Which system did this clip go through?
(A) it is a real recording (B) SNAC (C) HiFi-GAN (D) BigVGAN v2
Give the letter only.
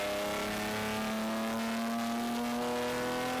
A